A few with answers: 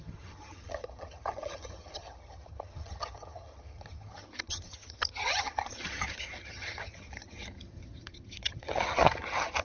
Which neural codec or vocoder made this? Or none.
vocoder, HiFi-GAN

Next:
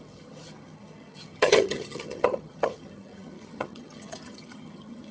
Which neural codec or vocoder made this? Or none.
vocoder, HiFi-GAN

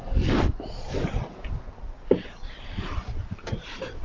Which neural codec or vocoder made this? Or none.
none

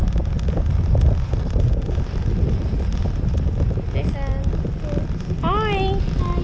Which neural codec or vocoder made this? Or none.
none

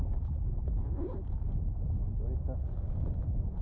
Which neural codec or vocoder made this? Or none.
none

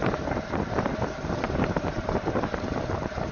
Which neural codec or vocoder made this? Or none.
none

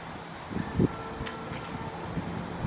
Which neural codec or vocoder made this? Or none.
none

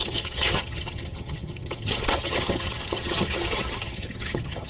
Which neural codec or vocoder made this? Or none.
vocoder, HiFi-GAN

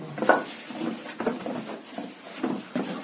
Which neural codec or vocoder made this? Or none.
none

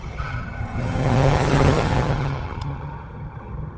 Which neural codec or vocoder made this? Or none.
vocoder, HiFi-GAN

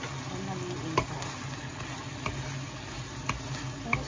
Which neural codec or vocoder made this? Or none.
none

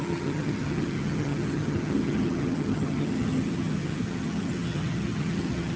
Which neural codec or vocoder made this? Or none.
vocoder, HiFi-GAN